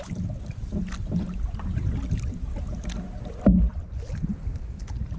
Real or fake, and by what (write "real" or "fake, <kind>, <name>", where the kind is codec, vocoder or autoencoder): real